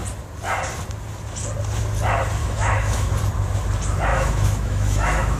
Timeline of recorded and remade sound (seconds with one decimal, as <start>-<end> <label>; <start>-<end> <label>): 0.0-2.4 recorded; 2.4-3.1 remade; 3.1-4.1 recorded; 4.1-5.4 remade